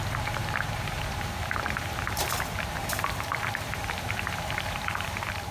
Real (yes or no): no